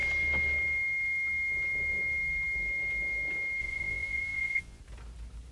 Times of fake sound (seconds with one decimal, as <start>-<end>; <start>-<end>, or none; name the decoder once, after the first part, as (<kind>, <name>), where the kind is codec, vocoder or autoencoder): 3.6-4.8 (vocoder, Vocos)